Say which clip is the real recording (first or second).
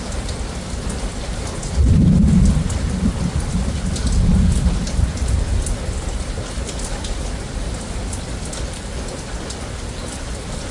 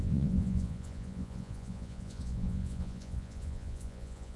first